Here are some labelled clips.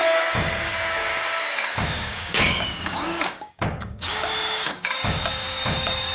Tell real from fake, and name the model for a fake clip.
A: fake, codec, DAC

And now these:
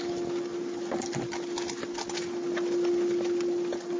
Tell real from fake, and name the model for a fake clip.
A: real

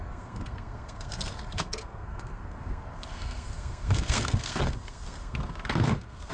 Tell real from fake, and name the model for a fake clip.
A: fake, codec, SNAC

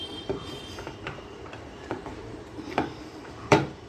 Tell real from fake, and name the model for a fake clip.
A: fake, vocoder, BigVGAN v2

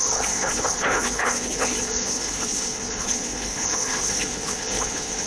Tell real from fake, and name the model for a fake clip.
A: fake, codec, HILCodec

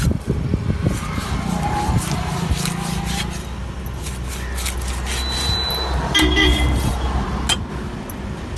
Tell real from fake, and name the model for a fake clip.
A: real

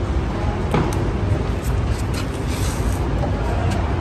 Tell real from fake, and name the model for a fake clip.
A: real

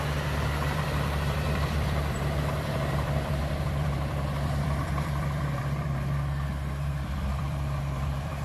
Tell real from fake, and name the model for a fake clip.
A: fake, vocoder, BigVGAN v2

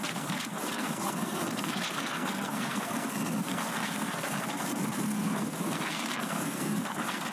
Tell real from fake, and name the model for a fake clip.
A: fake, codec, SNAC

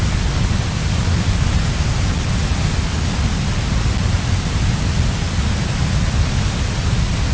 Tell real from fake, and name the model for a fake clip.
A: real